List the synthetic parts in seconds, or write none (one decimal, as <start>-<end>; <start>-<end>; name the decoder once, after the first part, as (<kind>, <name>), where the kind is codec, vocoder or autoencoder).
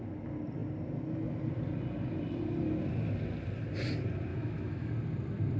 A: 4.3-4.9 (autoencoder, DAC-VAE)